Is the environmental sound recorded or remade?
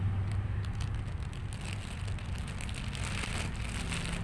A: recorded